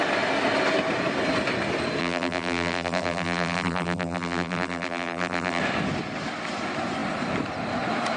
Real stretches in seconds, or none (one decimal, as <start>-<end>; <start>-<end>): 0.0-2.0; 5.6-8.2